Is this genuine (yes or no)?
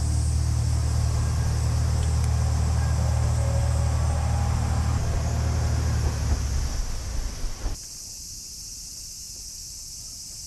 yes